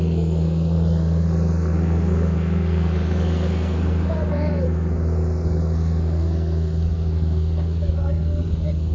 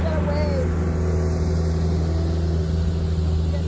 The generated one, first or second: first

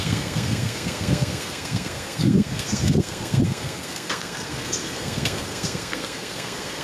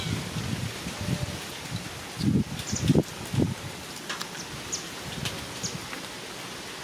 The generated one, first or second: first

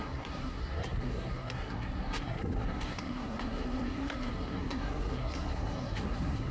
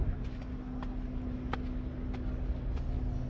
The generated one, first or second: first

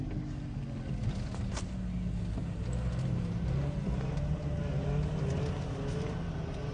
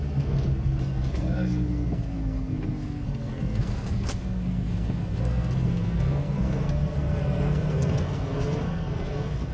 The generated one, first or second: second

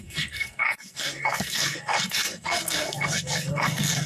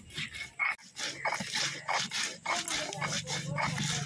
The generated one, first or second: first